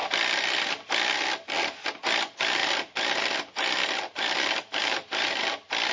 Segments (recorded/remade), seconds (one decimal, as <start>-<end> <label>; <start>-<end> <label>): 0.0-4.8 recorded; 4.8-5.4 remade; 5.4-5.9 recorded